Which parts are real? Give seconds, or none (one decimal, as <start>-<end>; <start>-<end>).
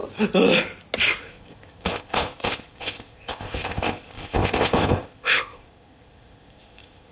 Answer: 0.0-1.2